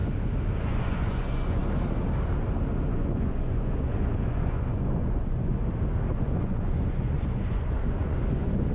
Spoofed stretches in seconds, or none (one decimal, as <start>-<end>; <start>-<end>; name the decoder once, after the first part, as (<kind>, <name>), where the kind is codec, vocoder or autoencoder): 0.6-1.6 (vocoder, Vocos); 2.9-5.5; 6.1-8.7